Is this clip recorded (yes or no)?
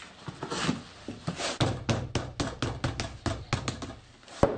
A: yes